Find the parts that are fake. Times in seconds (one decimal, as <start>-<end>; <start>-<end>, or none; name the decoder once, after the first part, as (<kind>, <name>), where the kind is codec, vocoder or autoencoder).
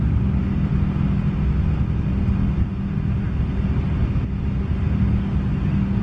none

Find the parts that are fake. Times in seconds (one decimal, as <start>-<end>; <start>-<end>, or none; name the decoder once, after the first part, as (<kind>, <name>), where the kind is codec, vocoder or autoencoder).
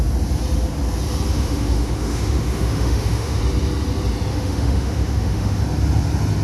1.3-3.4 (autoencoder, DAC-VAE); 4.3-5.6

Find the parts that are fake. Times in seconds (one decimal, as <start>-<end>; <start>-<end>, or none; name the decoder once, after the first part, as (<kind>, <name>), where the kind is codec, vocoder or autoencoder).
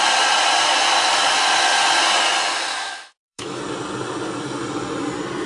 2.7-3.6 (autoencoder, DAC-VAE)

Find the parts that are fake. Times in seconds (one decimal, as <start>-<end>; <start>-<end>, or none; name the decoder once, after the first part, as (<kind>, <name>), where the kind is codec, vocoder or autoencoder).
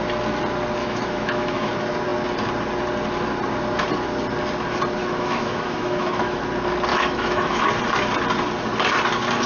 0.8-1.7 (autoencoder, DAC-VAE); 5.0-6.4; 6.9-7.7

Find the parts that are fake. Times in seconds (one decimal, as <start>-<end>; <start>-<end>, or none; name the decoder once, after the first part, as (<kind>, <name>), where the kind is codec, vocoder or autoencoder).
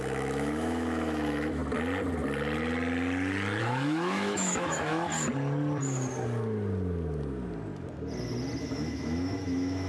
0.0-1.6 (autoencoder, DAC-VAE); 3.6-5.1; 8.6-9.9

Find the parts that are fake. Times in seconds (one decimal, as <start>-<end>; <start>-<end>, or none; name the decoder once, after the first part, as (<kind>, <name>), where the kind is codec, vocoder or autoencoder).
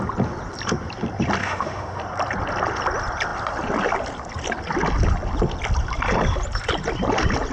1.4-2.0 (autoencoder, DAC-VAE)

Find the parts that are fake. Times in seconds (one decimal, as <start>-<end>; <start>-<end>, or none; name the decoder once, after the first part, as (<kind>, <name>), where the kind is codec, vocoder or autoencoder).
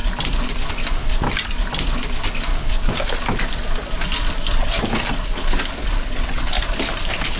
none